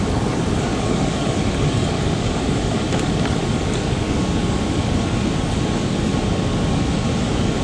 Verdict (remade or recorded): remade